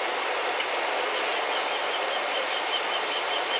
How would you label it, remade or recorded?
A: recorded